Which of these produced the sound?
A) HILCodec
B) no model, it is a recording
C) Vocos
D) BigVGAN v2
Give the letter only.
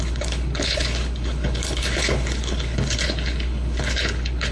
A